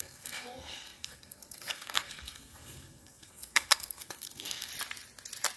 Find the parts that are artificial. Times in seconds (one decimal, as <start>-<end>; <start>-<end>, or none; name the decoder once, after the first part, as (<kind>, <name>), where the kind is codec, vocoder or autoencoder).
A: 0.0-4.7 (codec, SNAC)